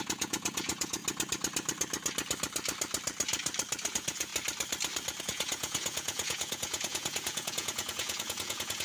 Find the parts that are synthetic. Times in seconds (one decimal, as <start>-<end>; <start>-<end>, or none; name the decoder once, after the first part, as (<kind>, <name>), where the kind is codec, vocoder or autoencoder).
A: 0.0-1.0 (vocoder, Vocos); 3.9-4.3; 5.2-8.8